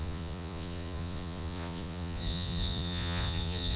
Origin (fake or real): fake